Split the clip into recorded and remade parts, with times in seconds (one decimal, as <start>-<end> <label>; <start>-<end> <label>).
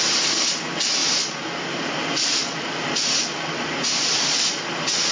0.0-5.1 recorded